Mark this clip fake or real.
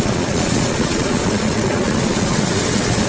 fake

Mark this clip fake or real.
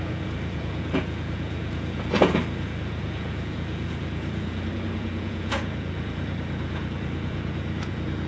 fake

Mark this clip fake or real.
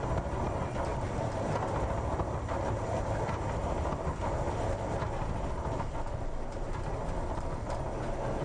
real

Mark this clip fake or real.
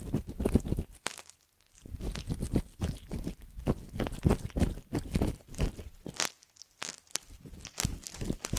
real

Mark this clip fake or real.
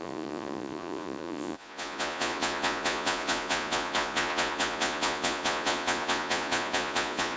fake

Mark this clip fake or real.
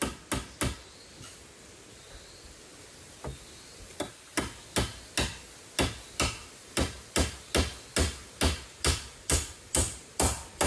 real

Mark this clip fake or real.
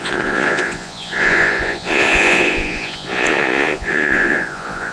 fake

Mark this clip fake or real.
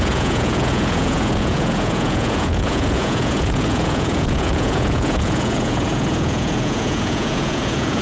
fake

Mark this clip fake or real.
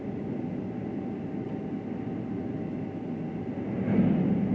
real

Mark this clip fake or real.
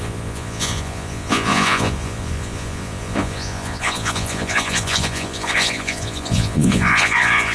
fake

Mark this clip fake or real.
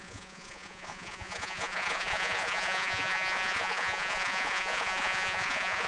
fake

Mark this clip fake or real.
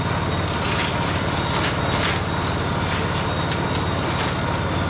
real